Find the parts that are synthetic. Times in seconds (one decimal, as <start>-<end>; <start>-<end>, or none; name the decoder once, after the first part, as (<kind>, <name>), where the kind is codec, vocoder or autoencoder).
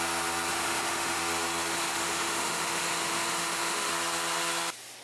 0.5-1.2 (autoencoder, DAC-VAE); 1.7-3.9